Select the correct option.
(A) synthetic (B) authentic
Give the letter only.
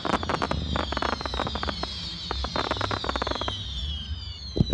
B